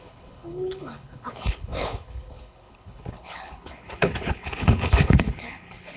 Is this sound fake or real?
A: fake